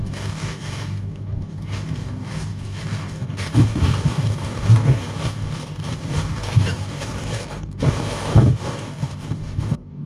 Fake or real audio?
fake